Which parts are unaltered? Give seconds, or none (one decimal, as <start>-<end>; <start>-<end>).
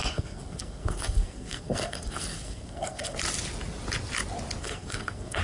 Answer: 3.2-4.6